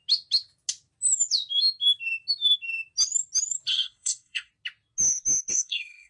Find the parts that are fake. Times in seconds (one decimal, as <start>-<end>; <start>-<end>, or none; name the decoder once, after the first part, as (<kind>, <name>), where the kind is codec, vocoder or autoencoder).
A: 3.7-4.5 (codec, SNAC); 5.5-6.1